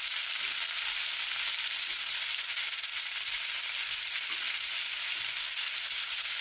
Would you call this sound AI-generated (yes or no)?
no